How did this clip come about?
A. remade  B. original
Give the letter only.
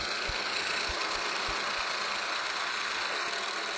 B